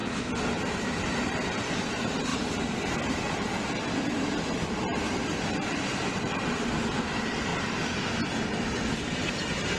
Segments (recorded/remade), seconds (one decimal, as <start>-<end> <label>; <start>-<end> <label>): 0.0-9.8 recorded